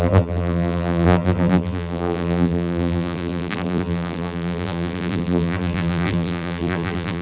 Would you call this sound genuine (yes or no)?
no